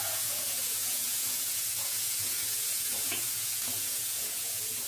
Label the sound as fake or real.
fake